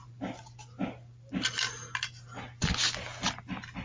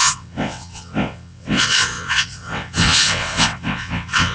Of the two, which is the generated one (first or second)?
second